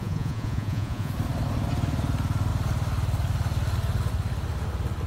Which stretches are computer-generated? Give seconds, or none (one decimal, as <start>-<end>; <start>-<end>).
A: 0.0-1.1